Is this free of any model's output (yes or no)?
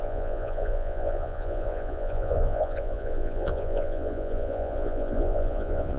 no